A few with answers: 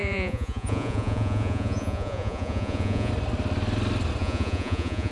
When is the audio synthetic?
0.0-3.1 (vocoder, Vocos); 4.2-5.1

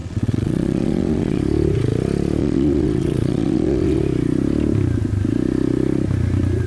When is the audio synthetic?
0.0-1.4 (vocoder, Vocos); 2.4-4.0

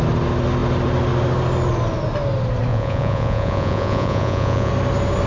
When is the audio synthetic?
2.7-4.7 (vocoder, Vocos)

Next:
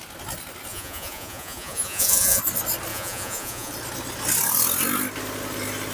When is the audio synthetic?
0.7-2.4 (vocoder, Vocos); 2.9-3.7